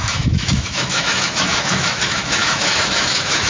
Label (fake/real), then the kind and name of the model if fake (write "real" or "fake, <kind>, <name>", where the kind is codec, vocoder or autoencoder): fake, autoencoder, DAC-VAE